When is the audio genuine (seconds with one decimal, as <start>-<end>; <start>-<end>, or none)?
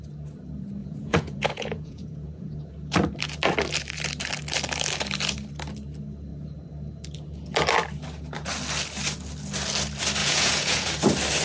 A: 0.0-0.8; 2.6-10.2; 10.9-11.4